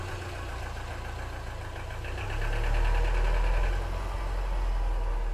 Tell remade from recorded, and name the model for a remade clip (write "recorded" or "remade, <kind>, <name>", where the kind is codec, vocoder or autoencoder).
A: recorded